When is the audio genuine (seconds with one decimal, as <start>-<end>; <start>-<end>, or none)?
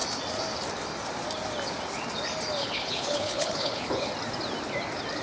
0.0-2.6; 4.1-5.2